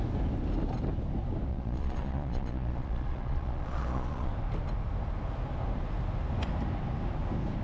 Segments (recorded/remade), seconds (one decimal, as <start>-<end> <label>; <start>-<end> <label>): 0.0-1.5 recorded; 1.5-4.3 remade; 4.3-7.6 recorded